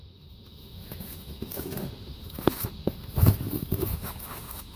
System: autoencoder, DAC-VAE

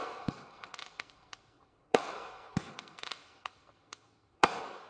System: codec, SNAC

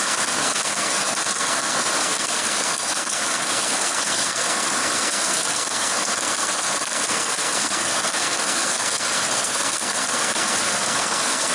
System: codec, SNAC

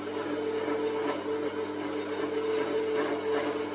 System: none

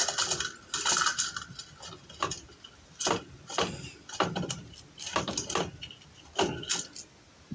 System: none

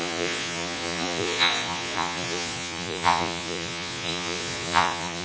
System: vocoder, Vocos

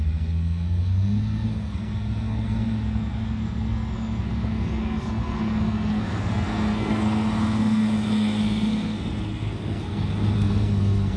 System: codec, SNAC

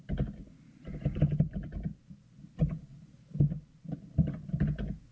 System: none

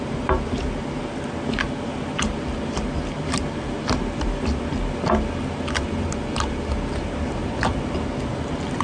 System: none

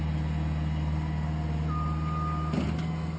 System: none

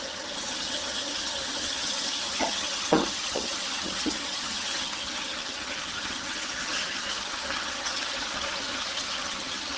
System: vocoder, HiFi-GAN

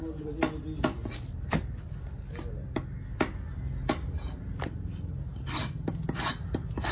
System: none